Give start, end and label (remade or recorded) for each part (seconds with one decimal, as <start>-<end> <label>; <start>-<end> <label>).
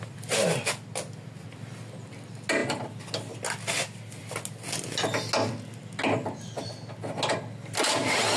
0.0-8.4 recorded